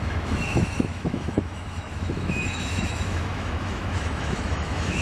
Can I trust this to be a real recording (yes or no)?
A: no